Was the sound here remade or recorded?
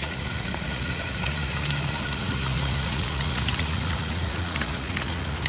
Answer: remade